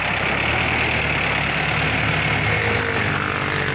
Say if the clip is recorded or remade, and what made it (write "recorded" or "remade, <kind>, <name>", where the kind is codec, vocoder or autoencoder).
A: recorded